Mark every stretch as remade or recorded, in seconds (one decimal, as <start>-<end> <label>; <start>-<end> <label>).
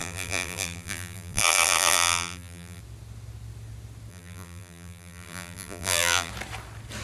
0.0-2.8 remade; 2.8-4.1 recorded; 4.1-6.3 remade; 6.3-7.0 recorded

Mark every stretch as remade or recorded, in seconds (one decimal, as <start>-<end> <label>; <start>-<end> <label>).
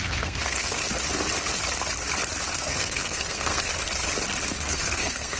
0.0-0.8 remade; 0.8-2.5 recorded; 2.5-3.7 remade; 3.7-4.5 recorded; 4.5-5.4 remade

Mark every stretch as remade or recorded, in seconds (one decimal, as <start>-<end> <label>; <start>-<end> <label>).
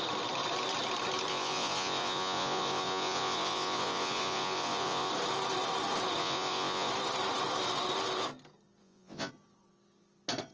0.0-1.3 recorded; 1.3-5.1 remade; 5.1-6.2 recorded; 6.2-6.9 remade; 6.9-8.8 recorded; 8.8-9.3 remade; 9.3-10.5 recorded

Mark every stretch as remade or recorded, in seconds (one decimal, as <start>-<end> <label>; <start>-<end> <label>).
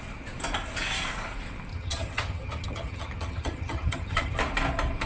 0.0-1.7 recorded; 1.7-4.4 remade; 4.4-5.1 recorded